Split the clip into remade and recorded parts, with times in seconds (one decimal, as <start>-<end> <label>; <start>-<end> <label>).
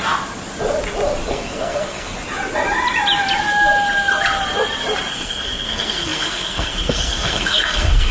0.0-1.3 recorded; 1.3-2.1 remade; 2.1-5.1 recorded; 5.1-8.1 remade